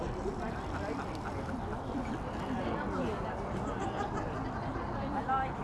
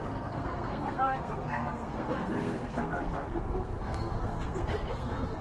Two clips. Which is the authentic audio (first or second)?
first